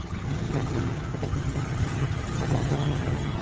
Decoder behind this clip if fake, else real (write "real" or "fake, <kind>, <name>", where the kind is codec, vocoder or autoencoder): fake, vocoder, HiFi-GAN